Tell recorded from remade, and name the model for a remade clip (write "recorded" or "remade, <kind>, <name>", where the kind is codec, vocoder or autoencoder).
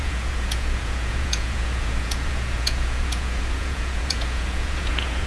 remade, vocoder, Vocos